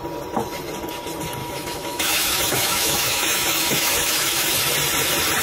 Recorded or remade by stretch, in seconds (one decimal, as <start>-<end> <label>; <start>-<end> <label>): 0.0-1.4 recorded; 1.4-4.6 remade; 4.6-5.4 recorded

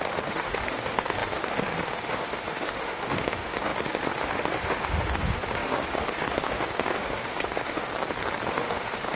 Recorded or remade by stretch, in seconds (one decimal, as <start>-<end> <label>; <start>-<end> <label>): 0.0-7.9 remade; 7.9-8.5 recorded; 8.5-9.2 remade

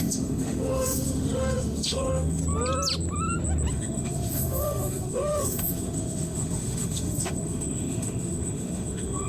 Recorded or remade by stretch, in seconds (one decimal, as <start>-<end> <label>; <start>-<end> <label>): 0.0-2.4 remade; 2.4-3.7 recorded; 3.7-9.3 remade